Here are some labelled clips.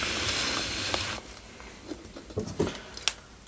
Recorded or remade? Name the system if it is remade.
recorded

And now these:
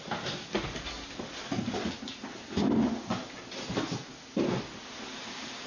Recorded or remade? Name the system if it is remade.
recorded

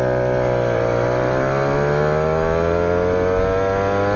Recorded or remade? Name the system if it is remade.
recorded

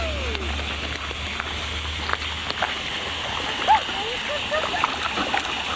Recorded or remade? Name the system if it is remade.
recorded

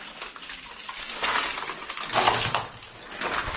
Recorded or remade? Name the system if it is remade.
recorded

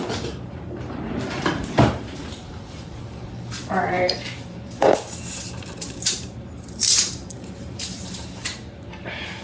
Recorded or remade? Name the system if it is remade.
remade, vocoder, BigVGAN v2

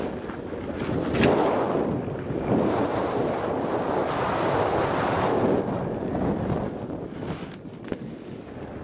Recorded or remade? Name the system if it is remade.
recorded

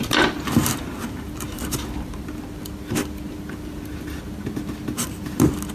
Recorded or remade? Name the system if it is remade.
recorded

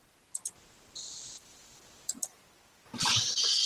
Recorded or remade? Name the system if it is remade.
recorded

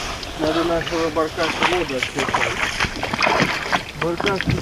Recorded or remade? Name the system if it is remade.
recorded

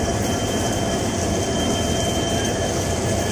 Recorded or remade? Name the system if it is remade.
remade, vocoder, BigVGAN v2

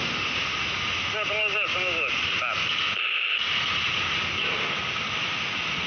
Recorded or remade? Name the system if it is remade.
recorded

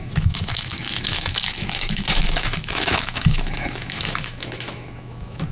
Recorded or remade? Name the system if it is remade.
remade, autoencoder, DAC-VAE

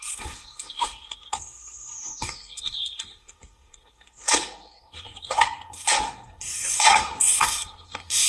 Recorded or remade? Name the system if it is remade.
remade, codec, SNAC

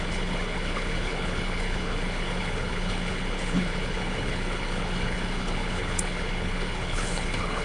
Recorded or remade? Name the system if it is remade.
remade, codec, HILCodec